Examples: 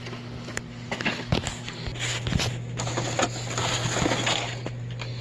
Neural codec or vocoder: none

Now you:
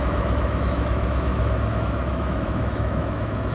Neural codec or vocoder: autoencoder, DAC-VAE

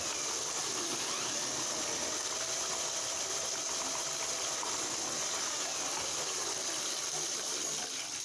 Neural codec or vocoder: none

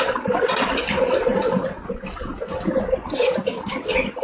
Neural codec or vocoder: none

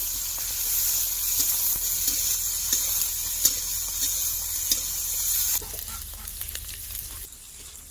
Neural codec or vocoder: none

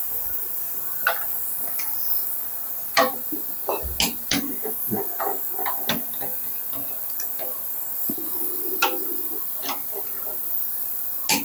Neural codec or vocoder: none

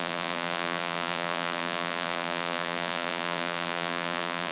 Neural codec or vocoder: vocoder, BigVGAN v2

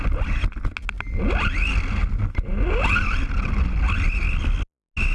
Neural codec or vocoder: none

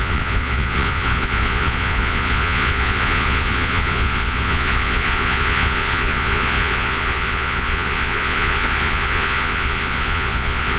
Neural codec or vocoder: vocoder, Vocos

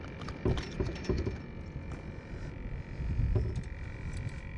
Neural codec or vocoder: none